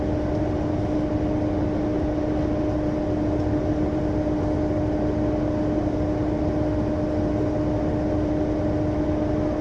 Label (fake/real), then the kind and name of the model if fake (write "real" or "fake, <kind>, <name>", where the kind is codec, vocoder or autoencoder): real